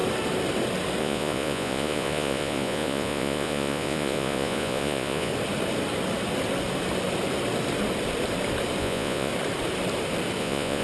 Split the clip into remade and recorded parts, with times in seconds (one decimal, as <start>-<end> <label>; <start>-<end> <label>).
0.0-1.0 recorded; 1.0-5.3 remade; 5.3-8.8 recorded; 8.8-9.3 remade; 9.3-10.4 recorded; 10.4-10.8 remade